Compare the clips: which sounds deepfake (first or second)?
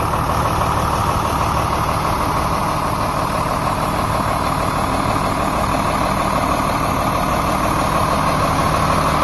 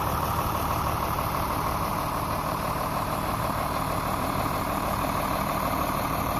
second